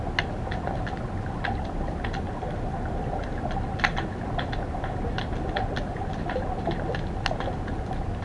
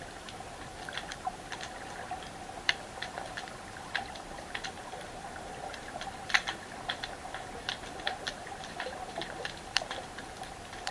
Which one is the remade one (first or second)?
second